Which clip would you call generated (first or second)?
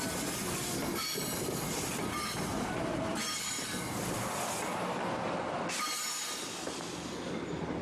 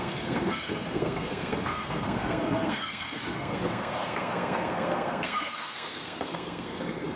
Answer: second